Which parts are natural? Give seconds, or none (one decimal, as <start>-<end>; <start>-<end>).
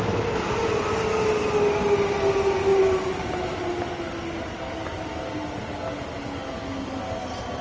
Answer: 0.0-7.6